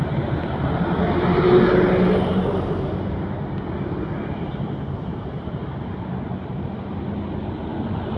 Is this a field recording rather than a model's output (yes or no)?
yes